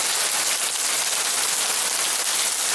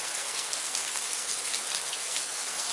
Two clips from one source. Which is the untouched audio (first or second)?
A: first